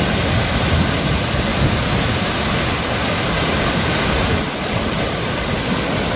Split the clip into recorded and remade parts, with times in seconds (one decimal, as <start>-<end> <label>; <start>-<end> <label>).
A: 0.0-6.2 recorded